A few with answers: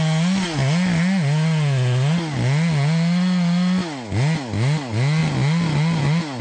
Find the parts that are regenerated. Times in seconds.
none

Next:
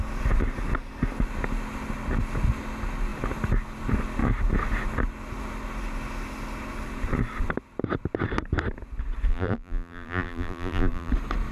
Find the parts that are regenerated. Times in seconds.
9.3-11.1 (vocoder, BigVGAN v2)

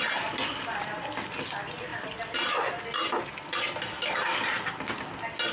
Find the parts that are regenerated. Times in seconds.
none

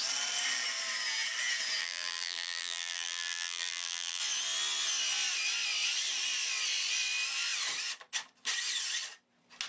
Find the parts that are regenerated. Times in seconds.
1.8-4.2 (vocoder, BigVGAN v2)